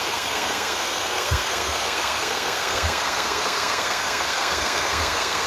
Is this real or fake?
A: fake